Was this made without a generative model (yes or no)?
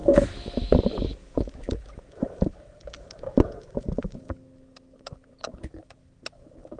no